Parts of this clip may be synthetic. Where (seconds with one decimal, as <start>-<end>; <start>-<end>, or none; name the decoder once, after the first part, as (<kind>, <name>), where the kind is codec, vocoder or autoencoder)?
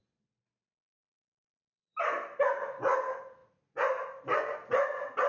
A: none